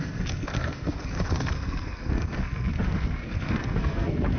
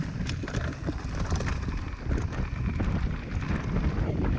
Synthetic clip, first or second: first